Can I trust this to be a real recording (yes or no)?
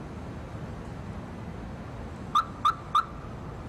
yes